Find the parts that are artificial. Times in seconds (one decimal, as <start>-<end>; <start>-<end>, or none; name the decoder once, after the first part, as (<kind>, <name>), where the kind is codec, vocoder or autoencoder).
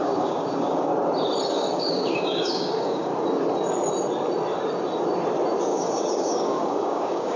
0.0-0.9 (codec, DAC); 1.5-3.1; 5.6-7.4